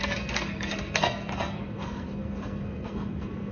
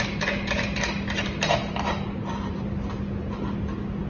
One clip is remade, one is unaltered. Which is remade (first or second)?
first